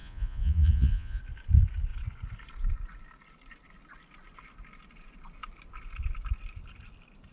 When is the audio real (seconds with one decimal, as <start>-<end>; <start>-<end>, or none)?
1.2-7.3